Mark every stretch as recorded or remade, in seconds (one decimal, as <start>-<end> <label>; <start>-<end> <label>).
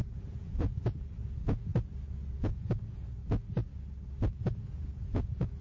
0.0-1.7 remade; 1.7-2.3 recorded; 2.3-3.2 remade; 3.2-4.4 recorded; 4.4-5.6 remade